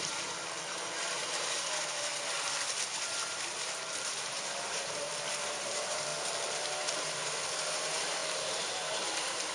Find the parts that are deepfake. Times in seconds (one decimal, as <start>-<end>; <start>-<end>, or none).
0.0-2.1; 3.3-6.1; 6.9-9.5